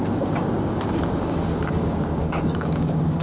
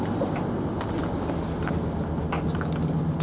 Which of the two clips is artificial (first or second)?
first